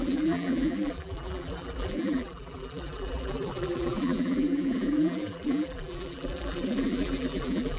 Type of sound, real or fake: fake